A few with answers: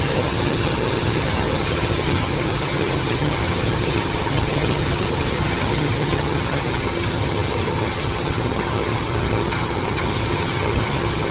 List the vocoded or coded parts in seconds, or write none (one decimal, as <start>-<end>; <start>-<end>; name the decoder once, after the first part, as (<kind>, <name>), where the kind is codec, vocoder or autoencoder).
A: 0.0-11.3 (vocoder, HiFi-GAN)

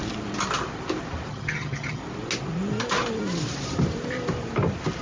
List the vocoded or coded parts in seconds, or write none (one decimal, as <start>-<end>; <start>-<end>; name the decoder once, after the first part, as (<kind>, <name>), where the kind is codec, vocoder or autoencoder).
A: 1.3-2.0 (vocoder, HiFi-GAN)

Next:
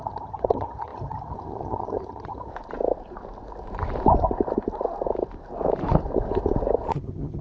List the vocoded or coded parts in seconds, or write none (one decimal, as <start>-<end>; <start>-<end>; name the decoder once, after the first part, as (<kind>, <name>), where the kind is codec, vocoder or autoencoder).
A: 0.0-2.5 (vocoder, HiFi-GAN); 6.9-7.4

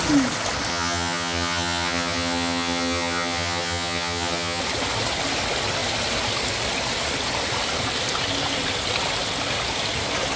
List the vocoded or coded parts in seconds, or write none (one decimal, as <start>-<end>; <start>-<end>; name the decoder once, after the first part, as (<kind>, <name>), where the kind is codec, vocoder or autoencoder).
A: 0.7-4.6 (vocoder, HiFi-GAN)

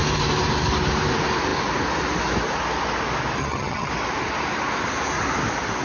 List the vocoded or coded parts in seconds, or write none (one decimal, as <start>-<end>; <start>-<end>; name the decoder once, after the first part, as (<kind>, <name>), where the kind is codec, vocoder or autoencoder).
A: 3.4-3.9 (vocoder, HiFi-GAN)

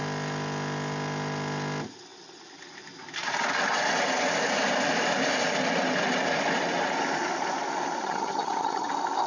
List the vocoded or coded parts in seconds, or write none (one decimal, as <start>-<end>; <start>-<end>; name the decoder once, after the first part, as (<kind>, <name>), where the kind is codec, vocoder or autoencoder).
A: 8.0-8.9 (vocoder, HiFi-GAN)

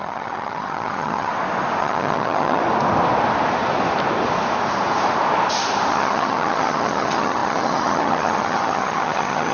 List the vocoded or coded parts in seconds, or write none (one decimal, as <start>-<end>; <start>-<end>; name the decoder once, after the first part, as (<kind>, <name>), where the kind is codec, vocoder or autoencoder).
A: 0.0-1.3 (vocoder, HiFi-GAN); 1.8-2.6; 5.9-9.5

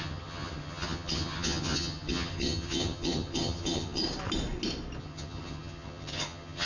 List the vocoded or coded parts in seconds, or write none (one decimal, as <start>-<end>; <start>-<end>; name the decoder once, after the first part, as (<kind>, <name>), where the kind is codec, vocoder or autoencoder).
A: 0.0-4.0 (vocoder, HiFi-GAN); 5.0-6.7